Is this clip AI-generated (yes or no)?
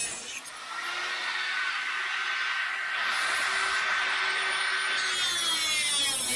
no